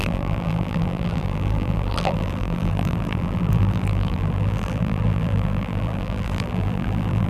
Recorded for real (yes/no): no